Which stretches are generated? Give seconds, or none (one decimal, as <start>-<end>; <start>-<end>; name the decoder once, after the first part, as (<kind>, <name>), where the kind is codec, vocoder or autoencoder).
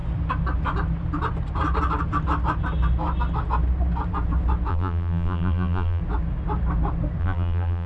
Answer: 4.7-6.0 (vocoder, BigVGAN v2); 7.2-7.9